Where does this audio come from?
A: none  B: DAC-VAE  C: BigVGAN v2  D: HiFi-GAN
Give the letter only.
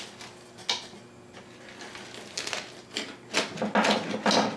A